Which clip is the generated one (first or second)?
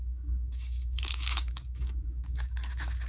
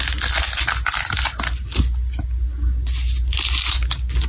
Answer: first